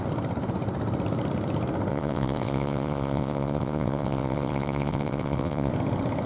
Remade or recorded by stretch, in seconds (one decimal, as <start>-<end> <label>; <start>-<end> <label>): 0.0-1.9 recorded; 1.9-5.7 remade; 5.7-6.3 recorded